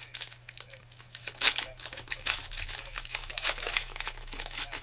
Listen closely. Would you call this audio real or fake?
fake